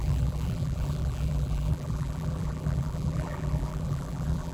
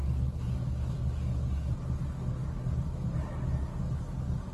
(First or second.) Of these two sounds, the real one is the second